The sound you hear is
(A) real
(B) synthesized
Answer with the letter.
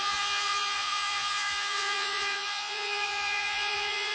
B